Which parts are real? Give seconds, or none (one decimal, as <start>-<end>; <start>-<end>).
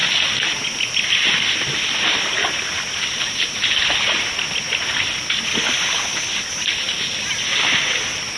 0.0-8.4